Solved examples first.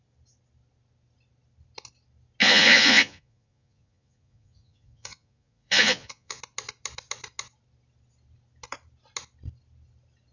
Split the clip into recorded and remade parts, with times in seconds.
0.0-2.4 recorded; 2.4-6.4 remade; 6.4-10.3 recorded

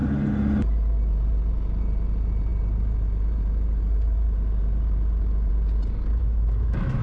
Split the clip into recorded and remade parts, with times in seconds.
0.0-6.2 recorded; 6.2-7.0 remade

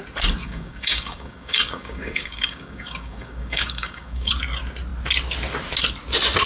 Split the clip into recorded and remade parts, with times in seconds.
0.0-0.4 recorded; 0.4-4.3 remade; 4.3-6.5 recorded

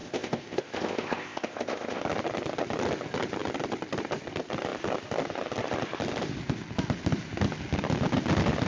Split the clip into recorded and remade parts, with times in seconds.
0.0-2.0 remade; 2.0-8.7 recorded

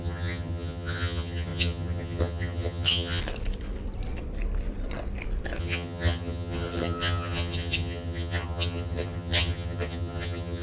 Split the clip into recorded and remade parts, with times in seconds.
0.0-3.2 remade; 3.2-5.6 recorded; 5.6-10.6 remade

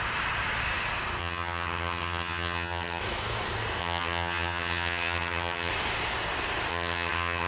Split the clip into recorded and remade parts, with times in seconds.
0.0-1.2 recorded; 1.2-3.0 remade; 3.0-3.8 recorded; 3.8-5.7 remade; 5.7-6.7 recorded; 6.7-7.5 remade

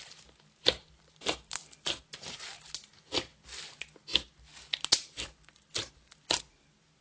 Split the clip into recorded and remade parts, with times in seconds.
0.0-7.0 recorded

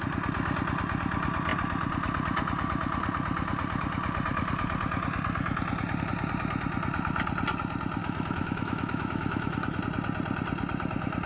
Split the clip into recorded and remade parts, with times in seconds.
0.0-8.0 recorded; 8.0-9.8 remade; 9.8-11.3 recorded